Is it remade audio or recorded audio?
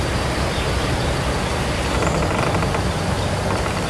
recorded